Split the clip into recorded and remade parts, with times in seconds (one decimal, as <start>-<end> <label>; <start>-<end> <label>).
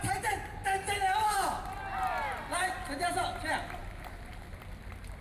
0.0-0.6 remade; 0.6-1.2 recorded; 1.2-5.2 remade